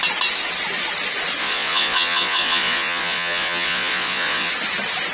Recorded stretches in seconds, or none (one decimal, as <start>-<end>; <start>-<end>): 0.0-1.4; 4.5-5.1